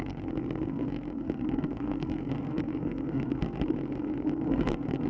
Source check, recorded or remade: remade